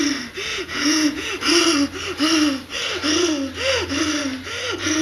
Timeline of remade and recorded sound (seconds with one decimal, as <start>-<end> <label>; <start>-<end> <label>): 0.0-0.5 recorded; 0.5-1.3 remade; 1.3-5.0 recorded